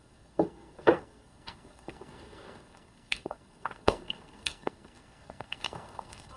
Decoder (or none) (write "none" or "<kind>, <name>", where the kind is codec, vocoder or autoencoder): codec, SNAC